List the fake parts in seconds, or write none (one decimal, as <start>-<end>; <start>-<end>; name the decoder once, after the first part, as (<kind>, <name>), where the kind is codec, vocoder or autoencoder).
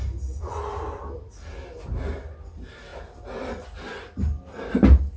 none